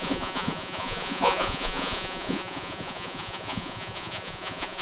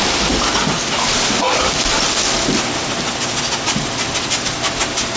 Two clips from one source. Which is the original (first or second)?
second